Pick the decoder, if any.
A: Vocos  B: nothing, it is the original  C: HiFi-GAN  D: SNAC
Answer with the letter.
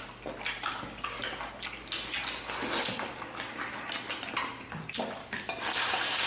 B